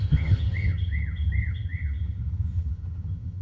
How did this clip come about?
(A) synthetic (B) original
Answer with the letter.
A